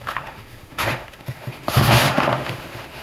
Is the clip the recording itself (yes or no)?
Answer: no